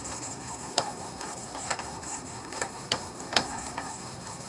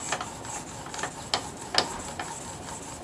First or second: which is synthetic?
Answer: first